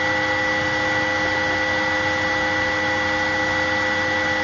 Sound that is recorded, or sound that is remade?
recorded